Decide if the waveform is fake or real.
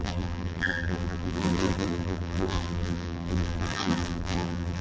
fake